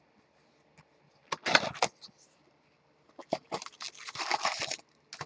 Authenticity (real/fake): real